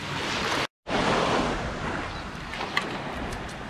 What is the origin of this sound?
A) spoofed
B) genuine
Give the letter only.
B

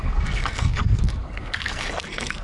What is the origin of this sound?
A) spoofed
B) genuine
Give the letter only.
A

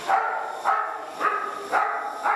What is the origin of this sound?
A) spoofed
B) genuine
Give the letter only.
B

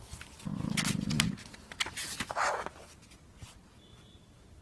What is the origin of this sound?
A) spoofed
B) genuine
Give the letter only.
B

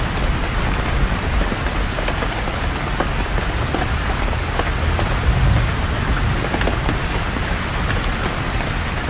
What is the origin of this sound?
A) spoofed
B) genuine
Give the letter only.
B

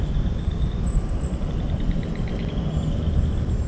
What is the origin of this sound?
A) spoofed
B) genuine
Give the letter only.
B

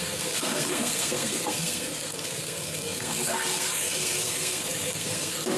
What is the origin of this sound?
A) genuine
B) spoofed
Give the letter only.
B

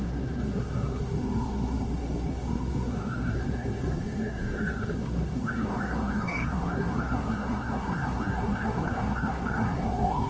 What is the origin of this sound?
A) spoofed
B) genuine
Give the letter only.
A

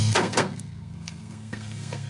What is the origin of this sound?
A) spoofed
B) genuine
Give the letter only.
A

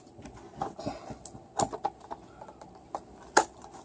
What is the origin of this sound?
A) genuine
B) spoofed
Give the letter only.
A